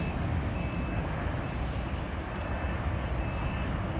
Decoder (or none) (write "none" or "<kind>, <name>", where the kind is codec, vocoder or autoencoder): none